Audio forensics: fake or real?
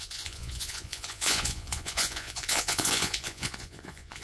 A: fake